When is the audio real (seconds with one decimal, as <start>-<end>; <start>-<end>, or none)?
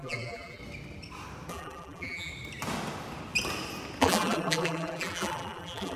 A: 0.6-1.5; 2.3-4.0